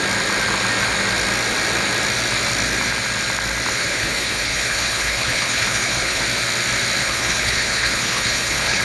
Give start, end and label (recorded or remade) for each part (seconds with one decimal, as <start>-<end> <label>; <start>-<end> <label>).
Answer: 0.0-3.7 recorded; 3.7-6.2 remade; 6.2-7.0 recorded; 7.0-8.8 remade